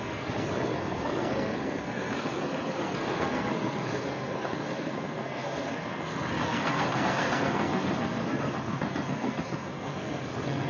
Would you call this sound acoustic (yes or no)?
no